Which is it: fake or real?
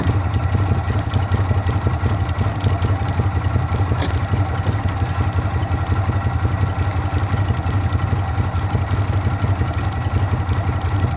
real